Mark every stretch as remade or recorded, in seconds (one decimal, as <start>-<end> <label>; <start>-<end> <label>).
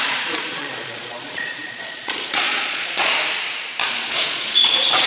0.0-3.1 remade; 3.1-3.9 recorded; 3.9-5.1 remade